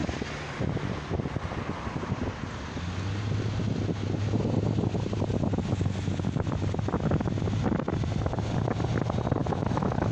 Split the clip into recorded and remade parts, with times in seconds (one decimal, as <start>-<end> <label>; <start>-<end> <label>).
0.0-9.4 recorded; 9.4-10.1 remade